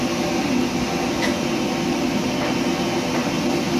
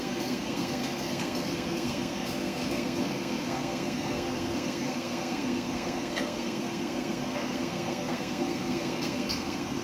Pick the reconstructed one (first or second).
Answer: second